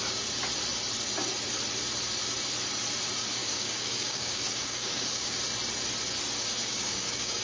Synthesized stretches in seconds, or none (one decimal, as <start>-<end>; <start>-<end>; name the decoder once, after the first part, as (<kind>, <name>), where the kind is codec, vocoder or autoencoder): 3.4-5.4 (codec, DAC); 6.6-7.4